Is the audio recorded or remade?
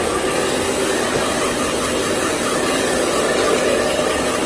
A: recorded